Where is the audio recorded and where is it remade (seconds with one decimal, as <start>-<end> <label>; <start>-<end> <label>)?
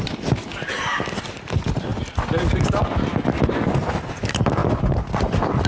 0.0-1.9 recorded; 1.9-2.4 remade; 2.4-5.7 recorded